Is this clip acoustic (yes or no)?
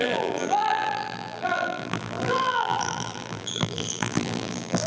no